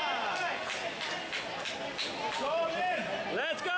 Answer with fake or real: real